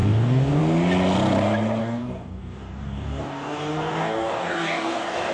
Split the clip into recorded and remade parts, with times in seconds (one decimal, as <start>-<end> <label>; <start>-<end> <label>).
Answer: 0.0-0.6 remade; 0.6-1.8 recorded; 1.8-5.3 remade